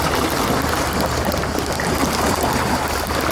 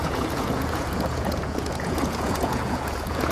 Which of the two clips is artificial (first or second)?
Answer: second